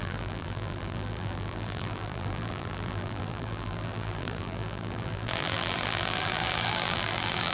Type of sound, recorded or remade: remade